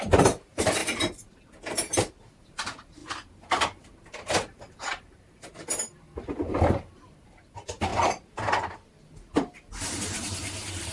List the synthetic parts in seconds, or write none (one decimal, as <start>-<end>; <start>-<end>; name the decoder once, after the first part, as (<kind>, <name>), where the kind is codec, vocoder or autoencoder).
0.0-0.8 (vocoder, BigVGAN v2); 2.4-7.9; 9.9-10.9